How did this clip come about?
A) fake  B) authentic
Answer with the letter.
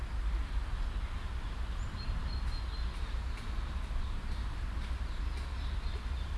B